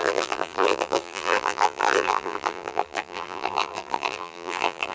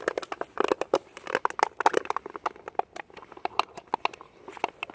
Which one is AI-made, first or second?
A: first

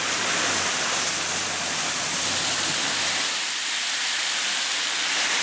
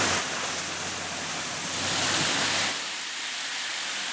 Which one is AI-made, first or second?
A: second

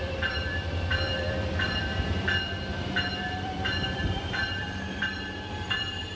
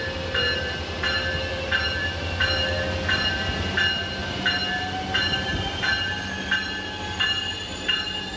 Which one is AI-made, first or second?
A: first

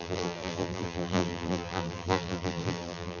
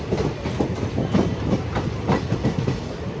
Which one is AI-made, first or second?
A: first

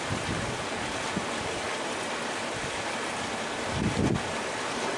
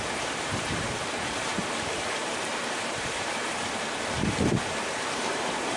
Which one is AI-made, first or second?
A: second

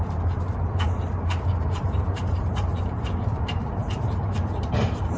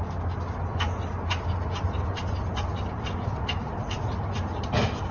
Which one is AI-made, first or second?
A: first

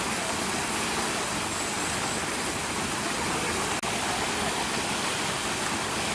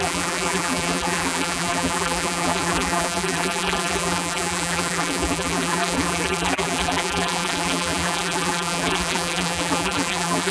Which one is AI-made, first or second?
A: second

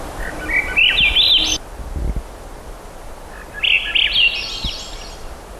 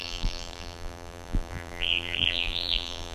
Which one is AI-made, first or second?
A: second